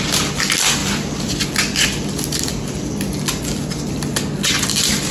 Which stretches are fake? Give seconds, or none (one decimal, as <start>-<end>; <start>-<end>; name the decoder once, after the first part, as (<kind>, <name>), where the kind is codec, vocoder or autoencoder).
none